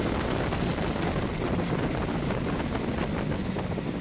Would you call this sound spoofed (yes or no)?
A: no